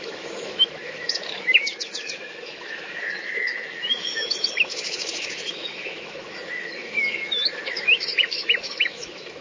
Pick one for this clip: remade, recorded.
remade